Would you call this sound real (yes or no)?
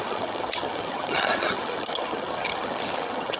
no